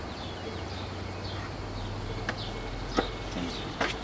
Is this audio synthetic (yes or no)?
no